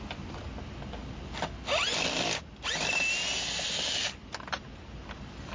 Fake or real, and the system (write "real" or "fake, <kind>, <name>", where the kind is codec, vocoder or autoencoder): real